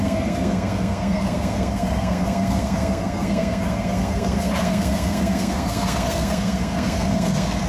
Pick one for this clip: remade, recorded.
remade